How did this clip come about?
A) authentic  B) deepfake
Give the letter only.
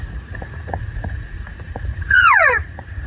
B